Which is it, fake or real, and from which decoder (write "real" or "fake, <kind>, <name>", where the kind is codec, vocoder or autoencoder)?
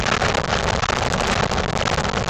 real